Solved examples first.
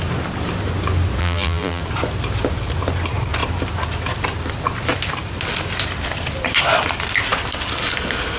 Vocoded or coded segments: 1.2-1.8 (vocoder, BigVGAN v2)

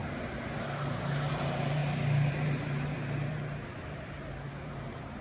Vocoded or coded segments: 1.3-1.8 (vocoder, BigVGAN v2); 2.3-5.2

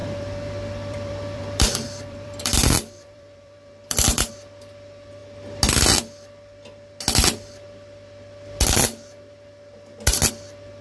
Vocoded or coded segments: 0.0-4.3 (vocoder, BigVGAN v2)